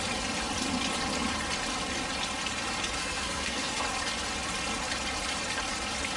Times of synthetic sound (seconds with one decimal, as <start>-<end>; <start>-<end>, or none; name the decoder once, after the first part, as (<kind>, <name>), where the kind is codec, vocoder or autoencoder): 3.0-3.8 (codec, SNAC)